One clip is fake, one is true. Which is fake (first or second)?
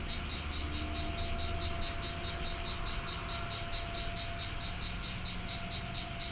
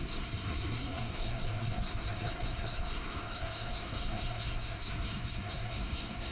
second